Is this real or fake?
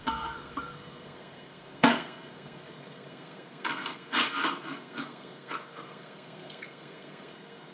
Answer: fake